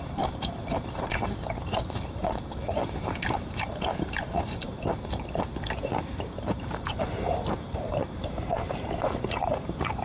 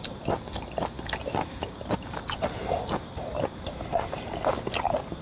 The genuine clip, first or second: second